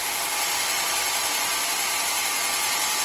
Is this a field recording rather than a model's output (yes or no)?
yes